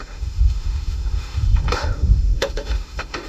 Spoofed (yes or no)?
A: yes